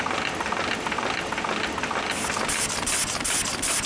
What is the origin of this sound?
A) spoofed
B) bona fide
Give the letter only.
B